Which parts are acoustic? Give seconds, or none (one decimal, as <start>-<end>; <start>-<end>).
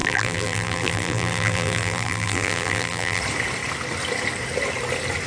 3.2-5.3